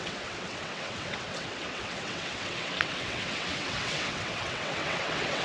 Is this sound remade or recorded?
remade